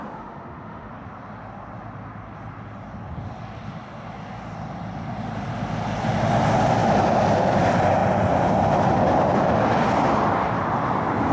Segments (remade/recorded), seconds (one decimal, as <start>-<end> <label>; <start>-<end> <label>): 0.0-0.9 remade; 0.9-11.3 recorded